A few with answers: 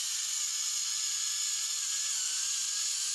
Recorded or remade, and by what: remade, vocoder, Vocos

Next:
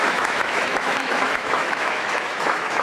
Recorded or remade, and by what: remade, autoencoder, DAC-VAE